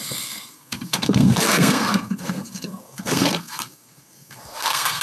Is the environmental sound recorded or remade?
remade